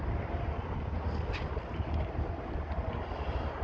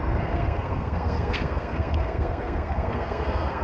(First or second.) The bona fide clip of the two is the first